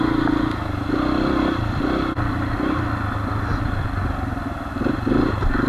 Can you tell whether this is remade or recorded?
recorded